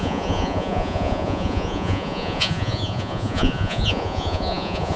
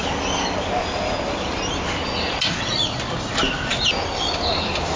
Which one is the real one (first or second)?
second